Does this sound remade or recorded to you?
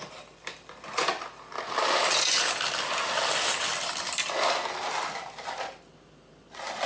recorded